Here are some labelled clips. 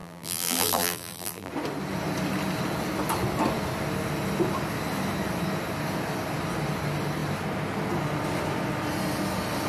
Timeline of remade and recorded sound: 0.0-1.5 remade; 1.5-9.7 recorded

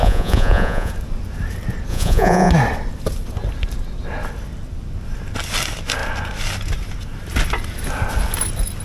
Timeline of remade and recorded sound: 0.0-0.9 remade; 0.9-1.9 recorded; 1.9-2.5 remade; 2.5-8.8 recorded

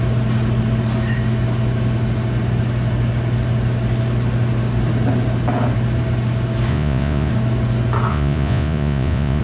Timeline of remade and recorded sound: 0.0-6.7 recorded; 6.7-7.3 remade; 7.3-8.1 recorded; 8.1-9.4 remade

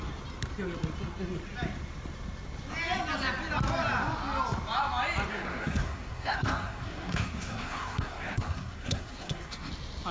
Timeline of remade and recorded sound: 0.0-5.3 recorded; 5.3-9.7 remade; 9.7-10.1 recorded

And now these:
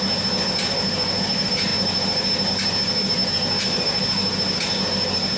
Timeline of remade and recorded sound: 0.0-5.4 recorded